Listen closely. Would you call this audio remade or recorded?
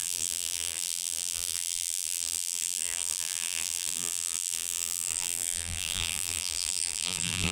remade